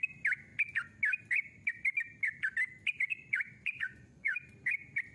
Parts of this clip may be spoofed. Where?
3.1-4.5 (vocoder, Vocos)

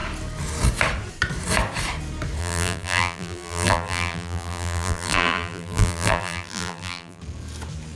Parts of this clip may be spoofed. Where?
2.4-7.2 (vocoder, BigVGAN v2)

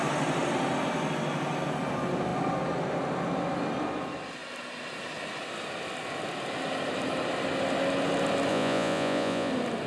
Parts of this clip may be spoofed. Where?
8.5-9.5 (vocoder, Vocos)

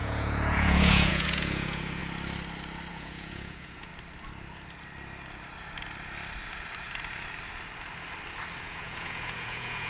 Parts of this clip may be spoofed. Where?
0.0-2.0 (vocoder, Vocos); 2.9-3.9; 8.6-9.9

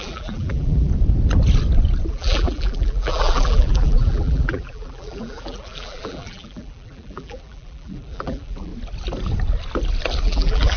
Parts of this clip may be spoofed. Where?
0.0-0.9 (vocoder, BigVGAN v2); 2.1-8.7; 10.2-10.8